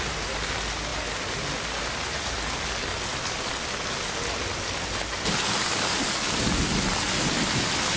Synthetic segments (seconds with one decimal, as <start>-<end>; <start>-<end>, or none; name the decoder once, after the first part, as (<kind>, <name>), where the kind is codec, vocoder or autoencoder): 5.7-6.5 (codec, DAC)